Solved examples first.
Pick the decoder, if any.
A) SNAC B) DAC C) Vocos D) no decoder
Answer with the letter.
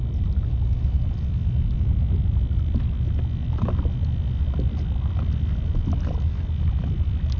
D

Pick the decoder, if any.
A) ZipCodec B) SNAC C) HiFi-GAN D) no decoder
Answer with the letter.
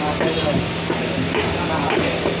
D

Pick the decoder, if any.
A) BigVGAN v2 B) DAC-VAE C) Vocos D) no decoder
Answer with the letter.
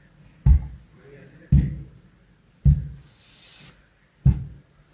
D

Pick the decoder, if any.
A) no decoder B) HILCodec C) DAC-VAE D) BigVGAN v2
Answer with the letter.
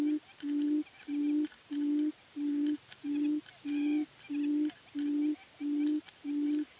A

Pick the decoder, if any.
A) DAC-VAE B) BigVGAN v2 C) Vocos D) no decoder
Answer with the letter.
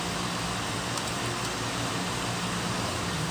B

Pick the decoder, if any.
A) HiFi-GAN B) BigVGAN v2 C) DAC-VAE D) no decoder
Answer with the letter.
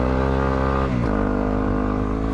D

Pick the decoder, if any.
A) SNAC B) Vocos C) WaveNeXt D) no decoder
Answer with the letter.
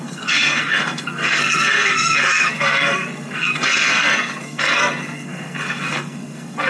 A